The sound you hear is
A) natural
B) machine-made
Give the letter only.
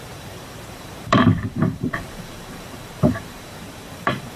B